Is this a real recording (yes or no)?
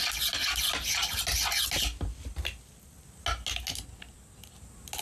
yes